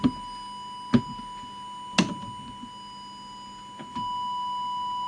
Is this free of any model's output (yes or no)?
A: yes